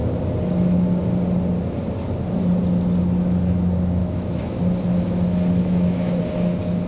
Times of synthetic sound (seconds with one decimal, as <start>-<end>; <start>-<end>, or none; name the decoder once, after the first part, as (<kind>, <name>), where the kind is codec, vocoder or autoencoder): 4.0-4.6 (autoencoder, DAC-VAE); 5.6-6.2